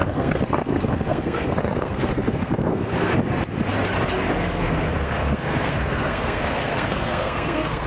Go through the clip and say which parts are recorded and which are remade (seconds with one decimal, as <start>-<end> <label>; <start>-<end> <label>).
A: 0.0-3.1 remade; 3.1-4.4 recorded; 4.4-7.9 remade